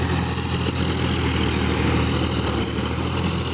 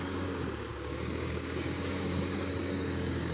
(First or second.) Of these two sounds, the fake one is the second